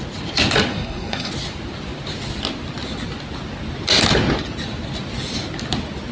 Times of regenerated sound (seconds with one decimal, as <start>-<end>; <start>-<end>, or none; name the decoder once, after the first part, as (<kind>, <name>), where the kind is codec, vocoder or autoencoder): 0.7-1.3 (codec, SNAC)